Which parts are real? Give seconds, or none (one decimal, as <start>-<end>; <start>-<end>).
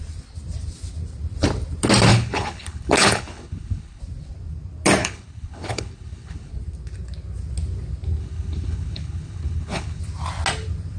0.0-2.1; 4.0-5.0; 6.5-8.2; 10.0-11.0